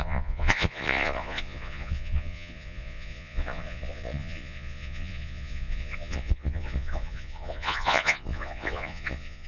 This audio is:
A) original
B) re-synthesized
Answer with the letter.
B